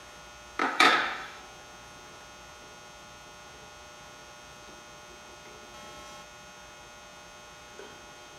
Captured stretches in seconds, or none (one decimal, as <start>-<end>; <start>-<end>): 0.0-0.6; 1.4-8.4